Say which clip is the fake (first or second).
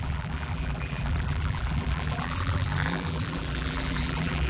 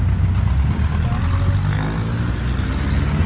first